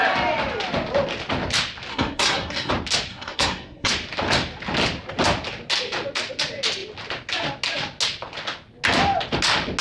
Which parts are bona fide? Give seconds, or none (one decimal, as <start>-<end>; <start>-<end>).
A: 0.0-1.9; 2.7-3.1; 3.9-9.8